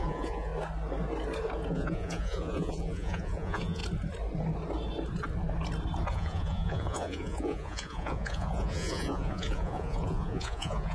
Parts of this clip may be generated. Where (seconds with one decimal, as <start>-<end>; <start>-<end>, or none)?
0.0-0.5; 1.7-3.8; 6.1-10.9